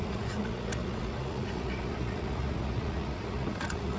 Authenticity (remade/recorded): remade